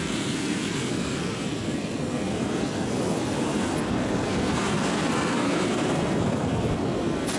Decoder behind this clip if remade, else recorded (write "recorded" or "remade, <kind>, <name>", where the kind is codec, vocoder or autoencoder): remade, codec, SNAC